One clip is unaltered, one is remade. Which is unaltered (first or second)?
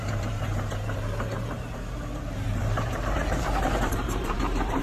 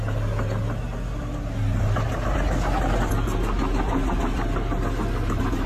second